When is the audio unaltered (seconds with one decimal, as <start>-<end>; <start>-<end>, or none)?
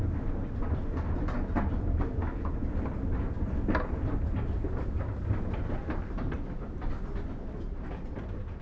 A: 0.0-8.6